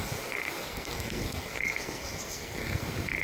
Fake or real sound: fake